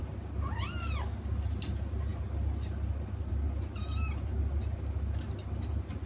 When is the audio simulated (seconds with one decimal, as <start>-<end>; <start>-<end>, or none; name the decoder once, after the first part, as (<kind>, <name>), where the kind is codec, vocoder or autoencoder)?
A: none